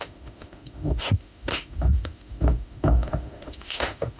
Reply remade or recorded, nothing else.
remade